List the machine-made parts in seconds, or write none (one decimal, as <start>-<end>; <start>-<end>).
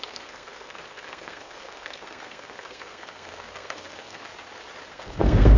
0.0-4.3; 4.9-5.6